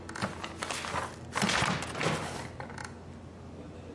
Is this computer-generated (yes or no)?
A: no